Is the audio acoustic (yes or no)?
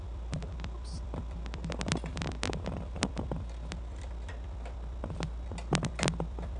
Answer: yes